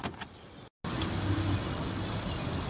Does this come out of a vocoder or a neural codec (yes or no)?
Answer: no